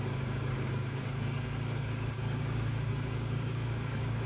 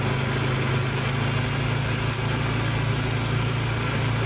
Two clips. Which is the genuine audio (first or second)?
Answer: second